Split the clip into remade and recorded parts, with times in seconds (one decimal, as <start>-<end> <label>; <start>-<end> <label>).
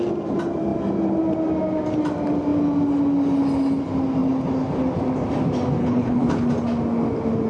0.0-5.8 recorded; 5.8-6.5 remade; 6.5-7.5 recorded